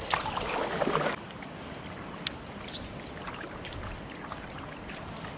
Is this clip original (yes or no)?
yes